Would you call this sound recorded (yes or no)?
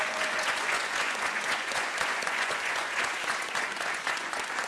no